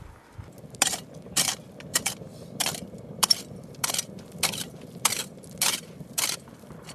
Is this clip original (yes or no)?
no